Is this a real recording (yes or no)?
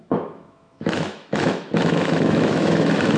no